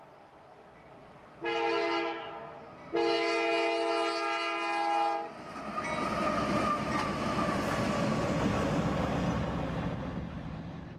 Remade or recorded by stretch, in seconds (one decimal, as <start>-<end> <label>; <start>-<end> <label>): 0.0-10.1 recorded; 10.1-11.0 remade